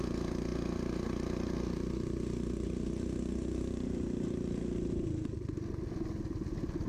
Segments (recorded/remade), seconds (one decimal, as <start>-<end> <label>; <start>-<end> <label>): 0.0-6.9 recorded

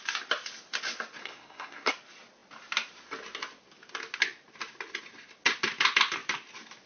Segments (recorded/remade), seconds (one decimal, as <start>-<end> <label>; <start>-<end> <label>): 0.0-1.2 recorded; 1.2-1.9 remade; 1.9-6.9 recorded

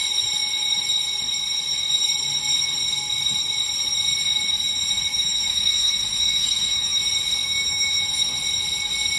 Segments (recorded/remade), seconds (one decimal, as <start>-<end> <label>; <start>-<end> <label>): 0.0-5.1 recorded; 5.1-7.0 remade; 7.0-7.4 recorded; 7.4-8.3 remade; 8.3-9.2 recorded

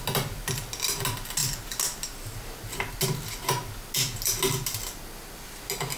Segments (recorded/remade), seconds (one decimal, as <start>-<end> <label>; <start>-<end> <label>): 0.0-6.0 recorded

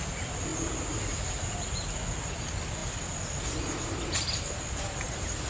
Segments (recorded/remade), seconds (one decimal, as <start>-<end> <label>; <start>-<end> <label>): 0.0-5.5 recorded

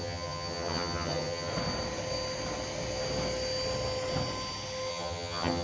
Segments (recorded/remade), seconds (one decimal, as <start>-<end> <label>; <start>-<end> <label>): 0.0-1.5 remade; 1.5-4.9 recorded; 4.9-5.6 remade

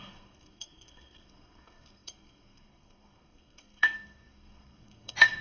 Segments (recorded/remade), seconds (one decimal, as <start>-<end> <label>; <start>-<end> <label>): 0.0-5.4 remade

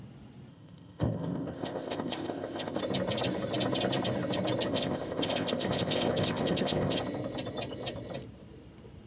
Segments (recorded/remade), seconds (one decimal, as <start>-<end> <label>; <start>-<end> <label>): 0.0-0.5 recorded; 0.5-2.8 remade; 2.8-4.7 recorded; 4.7-7.0 remade; 7.0-9.1 recorded